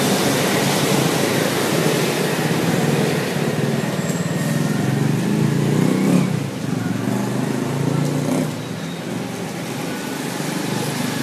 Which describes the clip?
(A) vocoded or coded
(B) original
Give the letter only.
B